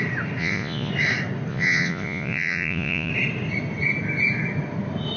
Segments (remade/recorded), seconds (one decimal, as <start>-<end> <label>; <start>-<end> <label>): 0.0-0.4 recorded; 0.4-0.9 remade; 0.9-1.5 recorded; 1.5-3.1 remade; 3.1-5.2 recorded